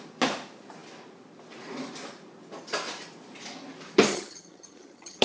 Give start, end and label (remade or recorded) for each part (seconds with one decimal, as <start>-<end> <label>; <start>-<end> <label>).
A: 0.0-4.1 recorded; 4.1-5.2 remade